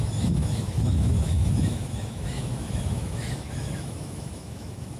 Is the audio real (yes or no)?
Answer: no